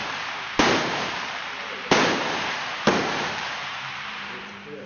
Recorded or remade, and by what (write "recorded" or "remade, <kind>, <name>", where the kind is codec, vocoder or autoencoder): remade, vocoder, BigVGAN v2